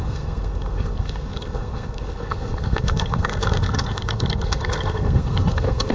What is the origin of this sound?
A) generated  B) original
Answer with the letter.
A